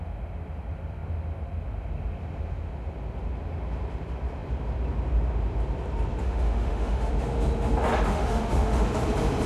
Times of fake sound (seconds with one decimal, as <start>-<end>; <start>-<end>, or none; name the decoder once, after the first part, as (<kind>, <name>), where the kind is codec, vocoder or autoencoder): 6.2-7.1 (autoencoder, DAC-VAE); 8.1-8.8